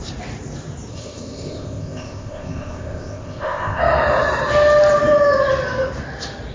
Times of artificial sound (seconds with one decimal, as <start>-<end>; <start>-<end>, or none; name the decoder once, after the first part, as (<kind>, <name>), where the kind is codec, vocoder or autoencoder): 0.9-3.8 (codec, ZipCodec)